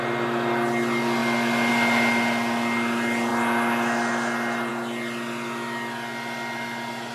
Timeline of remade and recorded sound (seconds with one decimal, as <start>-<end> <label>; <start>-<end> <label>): 0.0-7.1 recorded